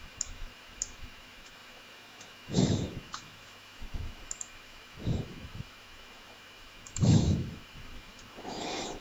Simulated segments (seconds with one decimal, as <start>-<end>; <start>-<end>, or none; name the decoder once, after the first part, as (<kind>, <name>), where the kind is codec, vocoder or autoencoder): 0.0-9.0 (autoencoder, DAC-VAE)